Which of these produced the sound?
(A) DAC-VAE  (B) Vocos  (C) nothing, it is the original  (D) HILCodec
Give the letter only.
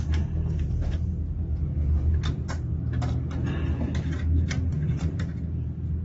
C